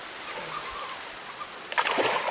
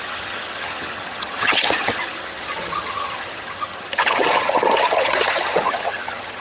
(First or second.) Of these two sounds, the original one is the first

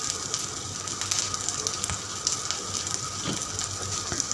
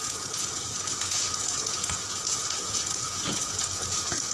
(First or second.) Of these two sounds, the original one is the first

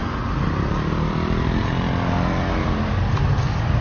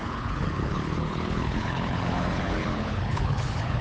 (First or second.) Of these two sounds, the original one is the first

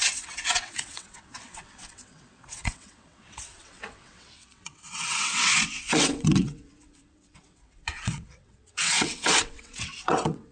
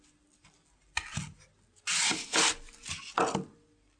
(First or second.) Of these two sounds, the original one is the second